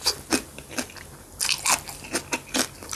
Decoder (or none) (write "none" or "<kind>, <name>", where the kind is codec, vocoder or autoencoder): none